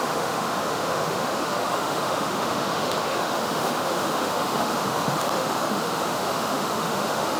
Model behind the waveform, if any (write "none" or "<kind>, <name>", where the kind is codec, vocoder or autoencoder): autoencoder, DAC-VAE